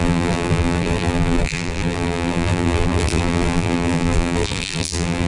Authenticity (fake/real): fake